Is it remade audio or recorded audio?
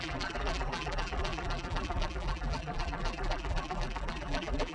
remade